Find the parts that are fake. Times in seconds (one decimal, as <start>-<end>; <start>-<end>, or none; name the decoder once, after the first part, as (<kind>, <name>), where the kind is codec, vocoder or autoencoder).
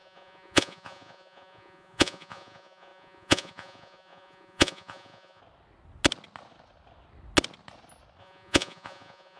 0.0-5.4 (vocoder, Vocos); 8.2-9.4